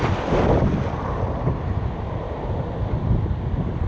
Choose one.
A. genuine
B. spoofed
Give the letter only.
A